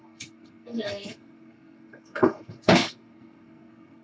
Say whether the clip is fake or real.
fake